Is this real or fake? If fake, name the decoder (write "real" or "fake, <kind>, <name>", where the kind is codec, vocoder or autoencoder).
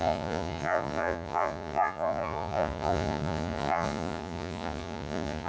fake, vocoder, Vocos